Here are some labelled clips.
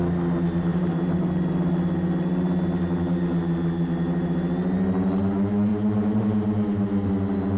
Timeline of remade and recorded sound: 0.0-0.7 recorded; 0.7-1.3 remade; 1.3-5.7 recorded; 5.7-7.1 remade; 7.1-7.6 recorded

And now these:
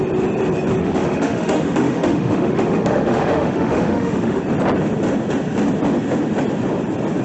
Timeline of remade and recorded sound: 0.0-0.8 recorded; 0.8-4.4 remade; 4.4-7.2 recorded

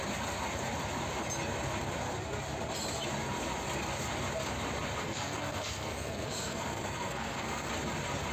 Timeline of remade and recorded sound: 0.0-5.0 recorded; 5.0-7.7 remade; 7.7-8.3 recorded